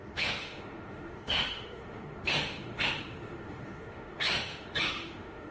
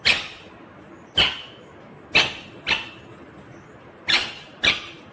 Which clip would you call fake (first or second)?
first